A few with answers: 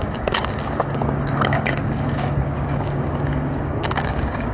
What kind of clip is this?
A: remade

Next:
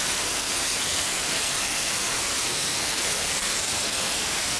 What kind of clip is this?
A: remade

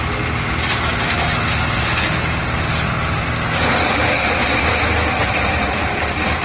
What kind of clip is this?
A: recorded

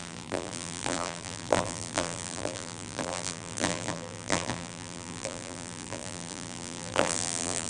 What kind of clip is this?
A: remade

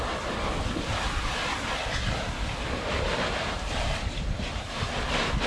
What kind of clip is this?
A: recorded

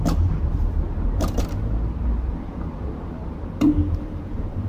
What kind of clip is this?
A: remade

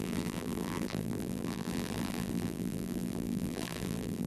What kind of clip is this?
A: remade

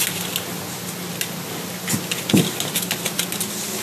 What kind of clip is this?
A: recorded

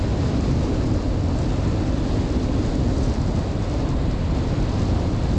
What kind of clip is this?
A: recorded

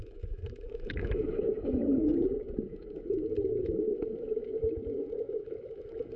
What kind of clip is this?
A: remade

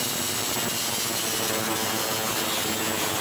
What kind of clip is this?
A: recorded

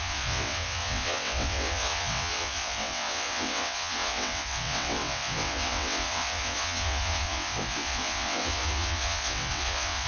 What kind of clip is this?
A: remade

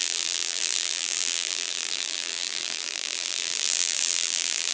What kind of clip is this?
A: remade